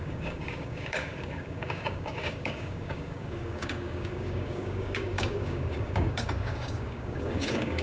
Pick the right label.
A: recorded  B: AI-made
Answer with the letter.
B